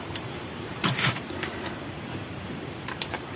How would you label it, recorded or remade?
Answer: remade